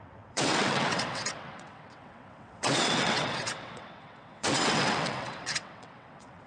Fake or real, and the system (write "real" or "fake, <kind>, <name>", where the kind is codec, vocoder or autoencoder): fake, vocoder, WaveNeXt